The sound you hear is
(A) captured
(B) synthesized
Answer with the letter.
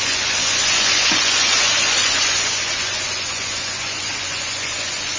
B